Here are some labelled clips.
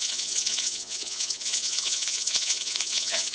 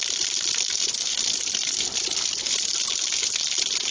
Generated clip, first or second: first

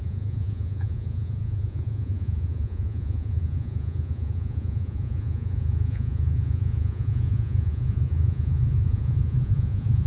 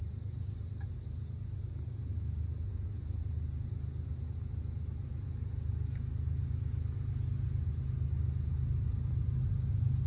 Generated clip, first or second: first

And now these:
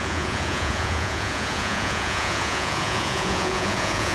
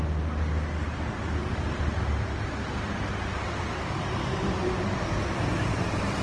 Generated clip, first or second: first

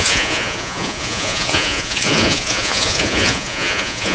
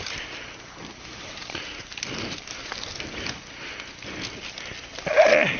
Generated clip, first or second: first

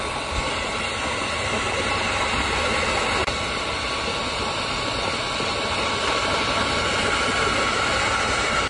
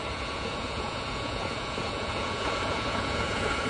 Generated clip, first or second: second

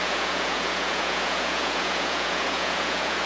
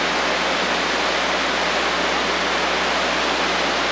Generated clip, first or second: first